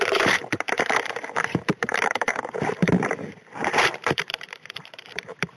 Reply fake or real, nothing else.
fake